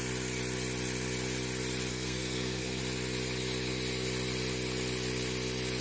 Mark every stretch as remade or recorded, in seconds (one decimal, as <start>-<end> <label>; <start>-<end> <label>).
0.0-1.9 recorded; 1.9-2.8 remade; 2.8-5.8 recorded